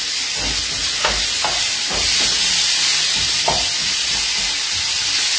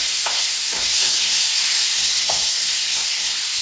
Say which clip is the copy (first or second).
second